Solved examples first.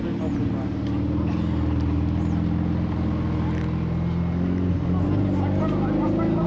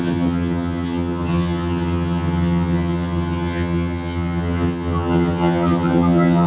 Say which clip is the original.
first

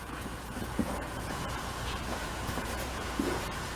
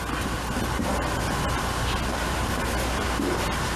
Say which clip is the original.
second